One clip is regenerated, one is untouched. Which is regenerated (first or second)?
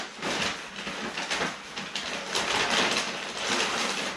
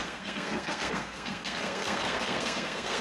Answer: second